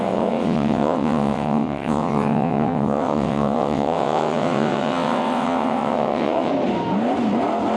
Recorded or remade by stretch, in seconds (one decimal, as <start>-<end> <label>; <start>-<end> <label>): 0.0-6.5 remade; 6.5-7.8 recorded